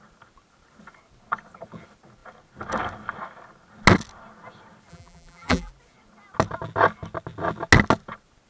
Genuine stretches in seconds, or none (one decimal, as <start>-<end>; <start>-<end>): 0.0-4.9; 5.7-8.5